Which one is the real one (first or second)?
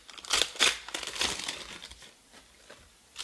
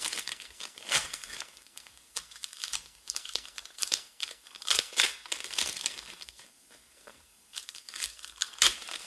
first